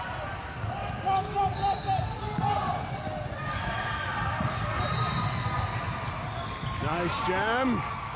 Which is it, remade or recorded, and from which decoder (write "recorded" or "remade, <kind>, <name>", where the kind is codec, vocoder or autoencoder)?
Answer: recorded